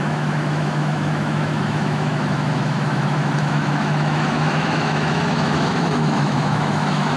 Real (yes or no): no